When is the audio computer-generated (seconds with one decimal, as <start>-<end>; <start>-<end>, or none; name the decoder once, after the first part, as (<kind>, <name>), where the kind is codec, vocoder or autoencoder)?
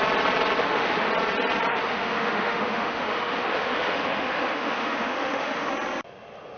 0.6-1.1 (autoencoder, DAC-VAE); 1.7-5.7